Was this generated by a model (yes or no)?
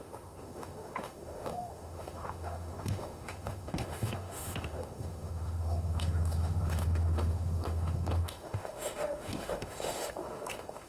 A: yes